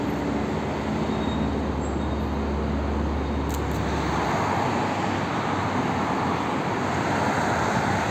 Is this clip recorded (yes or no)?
yes